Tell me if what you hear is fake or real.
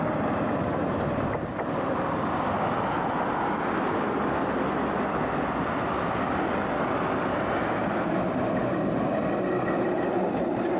real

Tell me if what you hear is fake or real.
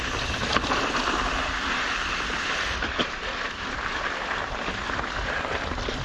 fake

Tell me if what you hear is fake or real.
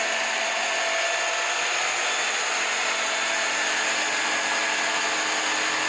real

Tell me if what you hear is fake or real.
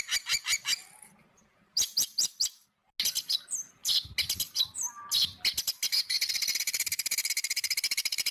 real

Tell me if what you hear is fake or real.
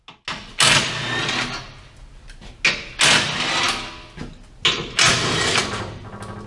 real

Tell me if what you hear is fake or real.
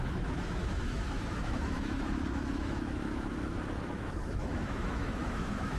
fake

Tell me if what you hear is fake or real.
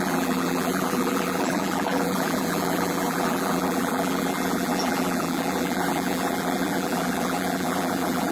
fake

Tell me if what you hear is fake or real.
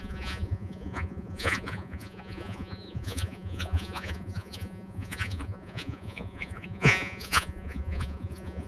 fake